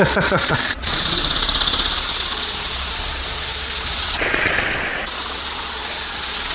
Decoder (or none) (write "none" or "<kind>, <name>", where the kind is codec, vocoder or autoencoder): vocoder, Vocos